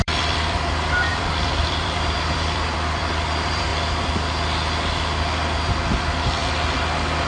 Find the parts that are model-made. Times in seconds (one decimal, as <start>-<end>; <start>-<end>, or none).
0.0-3.7; 5.7-6.4